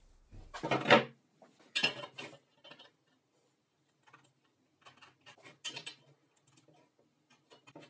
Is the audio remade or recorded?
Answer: recorded